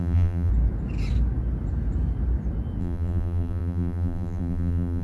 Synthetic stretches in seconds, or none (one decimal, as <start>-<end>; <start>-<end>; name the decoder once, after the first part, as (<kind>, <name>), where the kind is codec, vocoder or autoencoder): 0.0-0.5 (vocoder, BigVGAN v2); 2.8-5.0